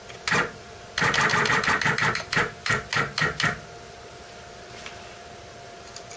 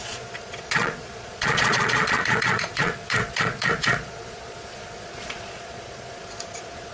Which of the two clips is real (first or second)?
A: first